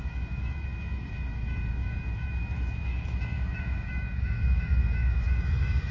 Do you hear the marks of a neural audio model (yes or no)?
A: yes